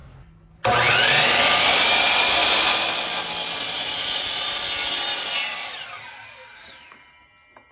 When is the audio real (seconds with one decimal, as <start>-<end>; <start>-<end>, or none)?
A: 0.0-7.7